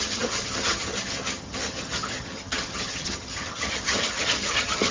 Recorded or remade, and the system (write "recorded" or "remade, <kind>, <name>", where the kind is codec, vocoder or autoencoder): remade, vocoder, HiFi-GAN